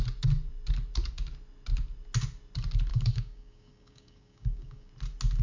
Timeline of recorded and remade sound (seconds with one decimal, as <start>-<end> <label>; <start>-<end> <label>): 0.0-2.9 recorded; 2.9-4.9 remade; 4.9-5.4 recorded